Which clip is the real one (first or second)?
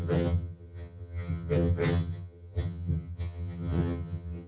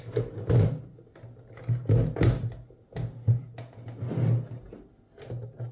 second